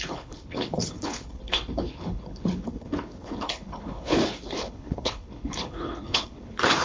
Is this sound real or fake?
fake